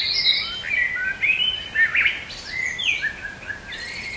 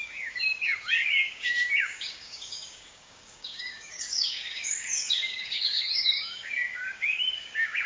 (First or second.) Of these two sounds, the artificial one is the second